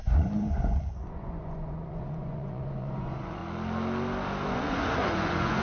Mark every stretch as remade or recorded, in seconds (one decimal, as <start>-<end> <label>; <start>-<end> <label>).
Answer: 0.0-3.4 remade; 3.4-4.5 recorded; 4.5-5.6 remade